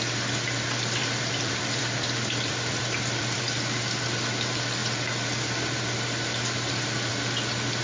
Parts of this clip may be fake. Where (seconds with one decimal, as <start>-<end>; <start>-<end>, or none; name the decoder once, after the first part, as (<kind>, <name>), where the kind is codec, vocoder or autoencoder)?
1.0-3.4 (vocoder, BigVGAN v2)